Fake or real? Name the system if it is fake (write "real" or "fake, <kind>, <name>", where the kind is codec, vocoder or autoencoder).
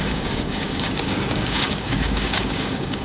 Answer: fake, codec, DAC